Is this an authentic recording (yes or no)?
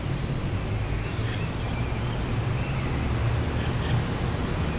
yes